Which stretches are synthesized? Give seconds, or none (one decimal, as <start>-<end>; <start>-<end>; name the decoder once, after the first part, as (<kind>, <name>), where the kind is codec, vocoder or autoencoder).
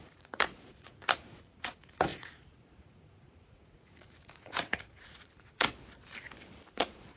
0.0-5.7 (vocoder, Vocos); 6.7-7.2